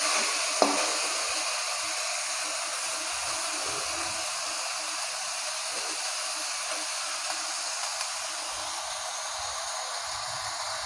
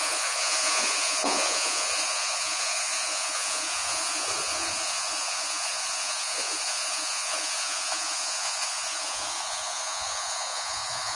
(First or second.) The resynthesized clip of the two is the second